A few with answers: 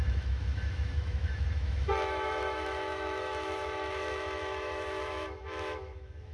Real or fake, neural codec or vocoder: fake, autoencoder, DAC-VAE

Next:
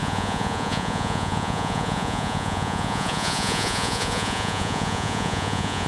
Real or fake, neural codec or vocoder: fake, vocoder, Vocos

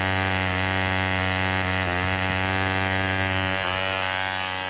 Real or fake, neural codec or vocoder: real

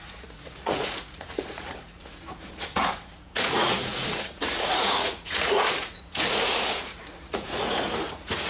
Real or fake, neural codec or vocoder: fake, vocoder, Vocos